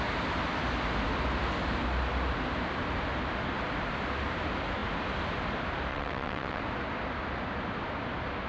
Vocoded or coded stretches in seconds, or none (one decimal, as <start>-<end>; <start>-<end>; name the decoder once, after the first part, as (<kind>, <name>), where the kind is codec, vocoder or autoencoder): 5.9-6.6 (vocoder, WaveNeXt)